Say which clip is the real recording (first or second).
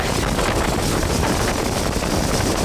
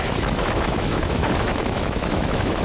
first